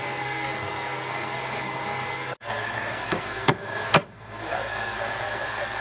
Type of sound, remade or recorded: remade